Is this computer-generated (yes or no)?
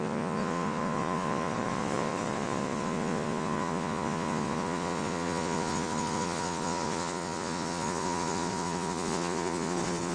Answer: yes